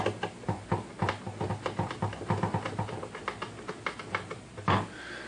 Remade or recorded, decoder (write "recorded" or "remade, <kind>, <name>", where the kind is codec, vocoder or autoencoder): recorded